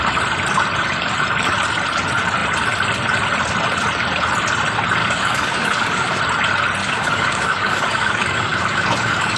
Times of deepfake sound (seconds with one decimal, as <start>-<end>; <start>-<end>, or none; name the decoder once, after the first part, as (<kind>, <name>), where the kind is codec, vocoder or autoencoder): 5.0-6.2 (codec, DAC); 6.8-9.4